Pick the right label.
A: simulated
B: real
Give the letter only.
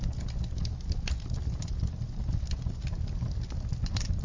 B